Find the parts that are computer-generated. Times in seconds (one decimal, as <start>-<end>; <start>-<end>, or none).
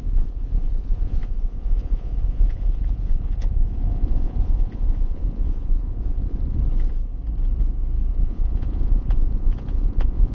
0.0-6.4; 8.1-10.3